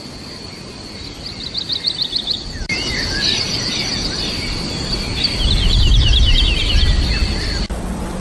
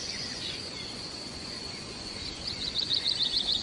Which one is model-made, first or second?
second